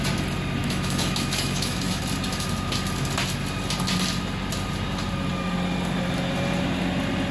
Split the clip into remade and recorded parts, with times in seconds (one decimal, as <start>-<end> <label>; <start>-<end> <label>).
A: 0.0-0.6 recorded; 0.6-2.0 remade; 2.0-7.3 recorded